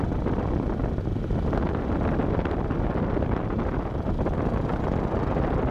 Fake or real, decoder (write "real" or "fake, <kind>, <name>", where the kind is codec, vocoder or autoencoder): real